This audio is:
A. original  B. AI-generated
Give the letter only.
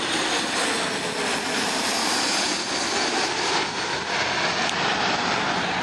A